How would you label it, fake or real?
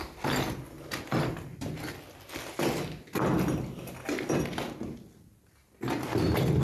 real